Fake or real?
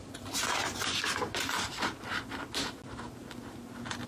real